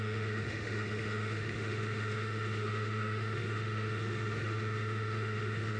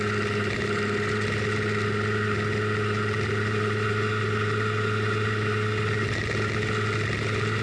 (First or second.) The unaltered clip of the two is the second